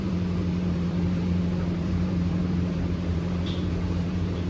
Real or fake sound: fake